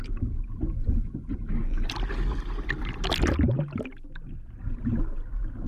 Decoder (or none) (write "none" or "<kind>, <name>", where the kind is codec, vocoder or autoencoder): none